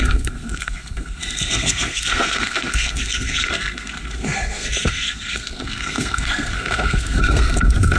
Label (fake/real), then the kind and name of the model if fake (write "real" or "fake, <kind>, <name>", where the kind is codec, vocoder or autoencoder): fake, codec, SNAC